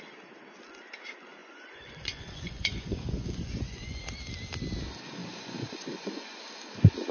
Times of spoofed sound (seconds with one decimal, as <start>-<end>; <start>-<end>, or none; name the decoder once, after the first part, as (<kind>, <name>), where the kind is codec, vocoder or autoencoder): 1.4-4.0 (vocoder, Vocos); 5.2-6.4